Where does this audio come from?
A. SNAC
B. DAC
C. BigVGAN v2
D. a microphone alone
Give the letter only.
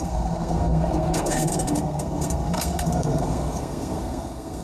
A